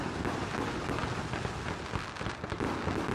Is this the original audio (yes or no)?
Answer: yes